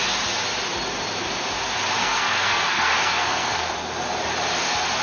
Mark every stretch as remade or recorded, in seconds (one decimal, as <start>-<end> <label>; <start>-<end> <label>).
0.0-2.0 recorded; 2.0-3.7 remade; 3.7-5.0 recorded